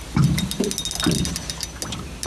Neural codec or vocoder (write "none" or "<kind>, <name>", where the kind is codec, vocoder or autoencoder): none